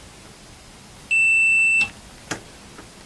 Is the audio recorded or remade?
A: recorded